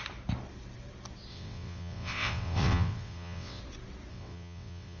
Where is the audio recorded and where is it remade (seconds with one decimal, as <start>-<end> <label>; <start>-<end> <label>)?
0.0-1.3 recorded; 1.3-3.6 remade; 3.6-4.1 recorded; 4.1-5.0 remade